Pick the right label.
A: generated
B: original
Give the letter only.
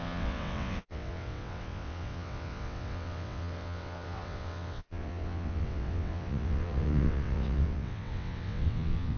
A